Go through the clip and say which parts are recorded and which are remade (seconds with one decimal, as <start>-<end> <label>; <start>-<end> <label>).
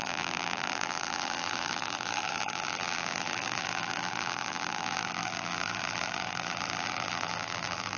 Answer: 0.0-8.0 remade